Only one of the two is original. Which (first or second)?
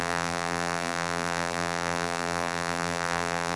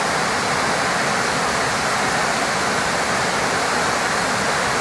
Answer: second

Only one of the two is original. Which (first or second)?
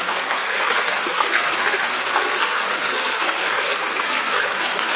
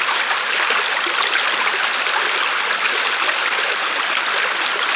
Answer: second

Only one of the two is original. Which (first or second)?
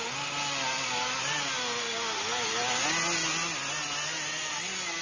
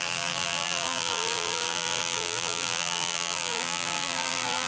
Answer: first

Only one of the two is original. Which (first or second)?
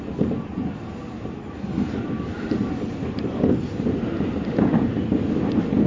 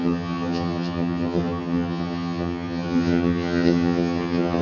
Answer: first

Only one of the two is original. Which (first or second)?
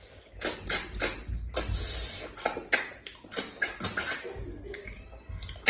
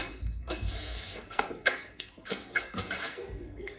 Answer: first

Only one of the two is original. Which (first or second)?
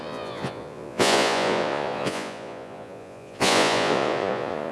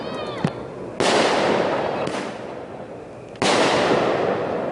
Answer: second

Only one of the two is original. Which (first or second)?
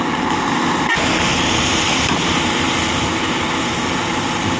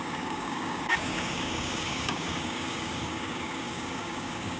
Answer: first